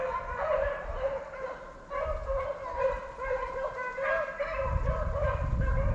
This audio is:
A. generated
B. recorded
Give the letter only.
B